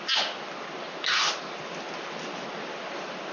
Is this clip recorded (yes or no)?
yes